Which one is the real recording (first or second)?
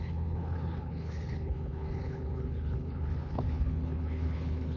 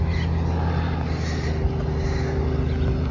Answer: second